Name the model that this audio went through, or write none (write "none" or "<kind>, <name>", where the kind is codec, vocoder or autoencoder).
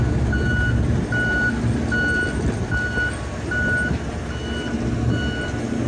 none